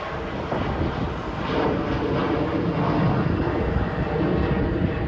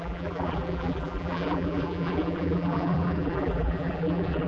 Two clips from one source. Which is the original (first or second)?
first